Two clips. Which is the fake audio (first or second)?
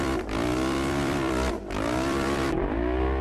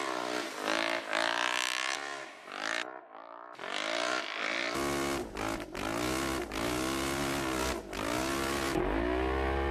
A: first